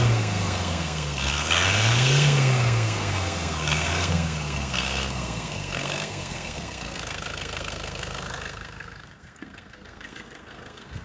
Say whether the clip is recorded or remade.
remade